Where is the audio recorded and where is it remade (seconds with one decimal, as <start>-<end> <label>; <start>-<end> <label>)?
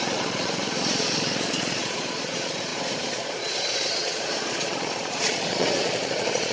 0.0-6.5 remade